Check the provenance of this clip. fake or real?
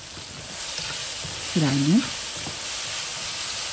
real